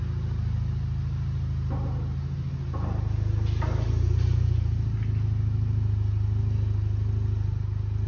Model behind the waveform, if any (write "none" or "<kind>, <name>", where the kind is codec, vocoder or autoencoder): none